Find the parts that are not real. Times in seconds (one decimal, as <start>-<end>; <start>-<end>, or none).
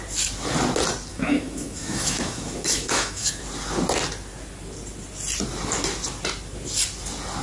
1.1-3.4